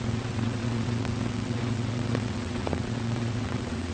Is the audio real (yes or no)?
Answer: no